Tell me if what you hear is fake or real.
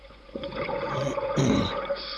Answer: fake